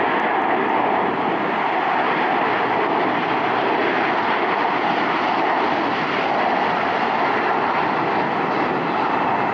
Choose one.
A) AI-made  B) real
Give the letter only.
B